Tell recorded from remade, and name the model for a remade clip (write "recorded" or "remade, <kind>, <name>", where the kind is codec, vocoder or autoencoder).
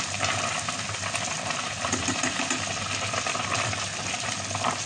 recorded